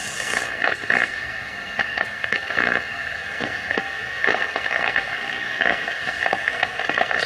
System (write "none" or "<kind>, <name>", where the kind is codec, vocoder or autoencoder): codec, SNAC